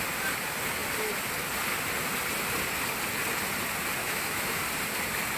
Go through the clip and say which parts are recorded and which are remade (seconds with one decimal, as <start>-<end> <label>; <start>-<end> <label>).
0.0-4.0 recorded; 4.0-4.6 remade; 4.6-5.4 recorded